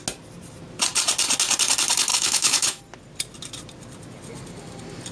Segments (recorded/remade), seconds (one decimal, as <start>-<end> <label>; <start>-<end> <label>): 0.0-2.1 recorded; 2.1-2.8 remade; 2.8-5.1 recorded